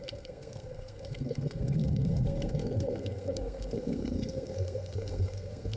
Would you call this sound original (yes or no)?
no